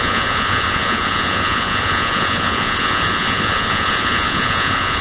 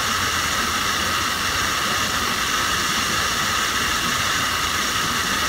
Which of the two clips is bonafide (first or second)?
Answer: second